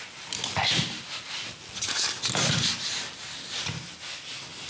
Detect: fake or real real